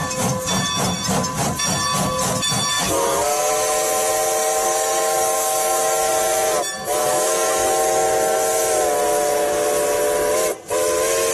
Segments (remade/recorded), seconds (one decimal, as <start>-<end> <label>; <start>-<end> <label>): 0.0-2.7 recorded; 2.7-3.5 remade; 3.5-4.4 recorded; 4.4-6.1 remade; 6.1-7.0 recorded; 7.0-7.7 remade; 7.7-11.3 recorded